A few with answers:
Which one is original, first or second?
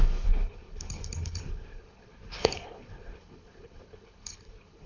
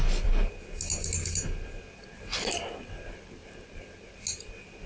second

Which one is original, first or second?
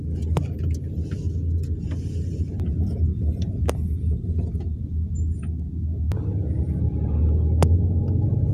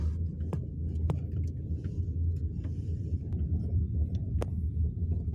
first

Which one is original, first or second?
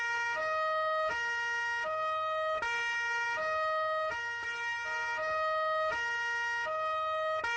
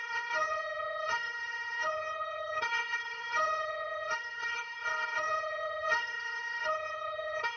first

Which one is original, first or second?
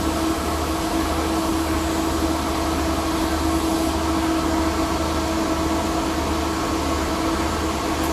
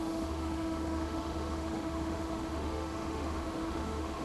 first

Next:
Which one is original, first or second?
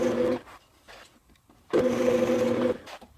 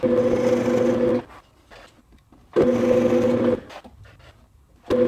second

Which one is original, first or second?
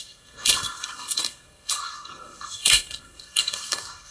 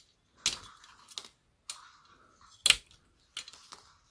second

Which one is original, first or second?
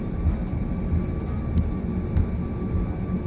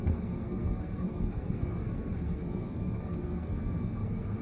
first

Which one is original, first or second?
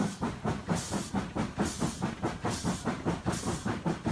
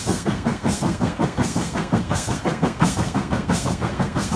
first